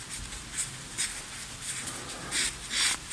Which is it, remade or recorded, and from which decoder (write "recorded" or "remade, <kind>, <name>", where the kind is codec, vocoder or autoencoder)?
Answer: recorded